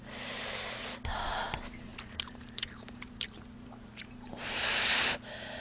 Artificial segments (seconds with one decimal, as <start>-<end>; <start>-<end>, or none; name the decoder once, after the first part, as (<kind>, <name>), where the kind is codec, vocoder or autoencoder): 1.9-5.1 (vocoder, BigVGAN v2)